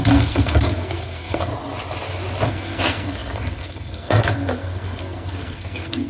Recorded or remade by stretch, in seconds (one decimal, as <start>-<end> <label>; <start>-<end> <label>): 0.0-1.5 remade; 1.5-2.5 recorded; 2.5-6.1 remade